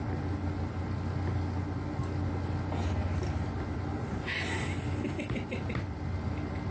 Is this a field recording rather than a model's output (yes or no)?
yes